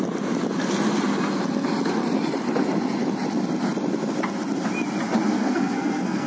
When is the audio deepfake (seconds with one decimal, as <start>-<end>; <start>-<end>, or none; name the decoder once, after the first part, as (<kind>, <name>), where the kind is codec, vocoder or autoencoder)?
5.3-6.3 (codec, SNAC)